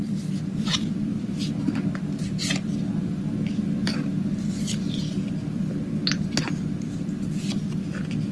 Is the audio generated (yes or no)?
no